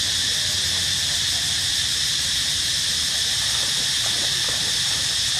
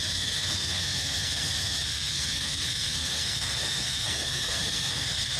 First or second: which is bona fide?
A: first